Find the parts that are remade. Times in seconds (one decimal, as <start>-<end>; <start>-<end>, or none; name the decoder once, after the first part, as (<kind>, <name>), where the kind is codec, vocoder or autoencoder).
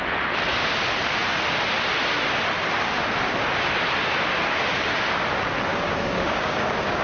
5.7-7.0 (codec, DAC)